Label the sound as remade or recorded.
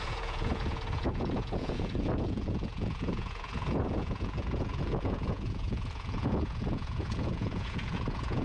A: remade